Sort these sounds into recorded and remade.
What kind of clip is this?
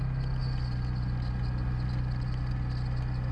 recorded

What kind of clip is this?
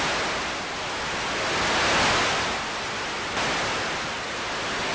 recorded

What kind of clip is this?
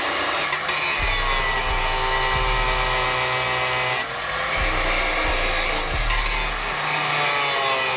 recorded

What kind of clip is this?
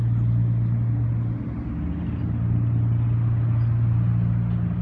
recorded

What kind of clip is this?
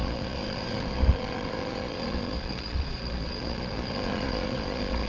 remade